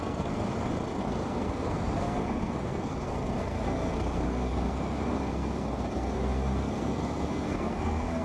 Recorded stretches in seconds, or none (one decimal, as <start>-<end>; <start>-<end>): 0.5-1.0